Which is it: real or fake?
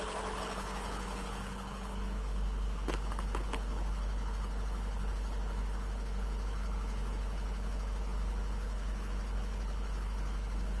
fake